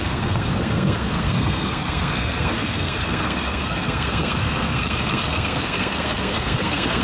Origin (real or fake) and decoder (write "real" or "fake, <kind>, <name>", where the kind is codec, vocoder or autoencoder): fake, codec, SNAC